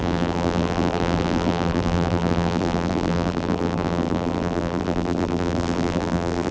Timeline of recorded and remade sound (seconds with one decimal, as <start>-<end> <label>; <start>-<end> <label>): 0.0-6.5 remade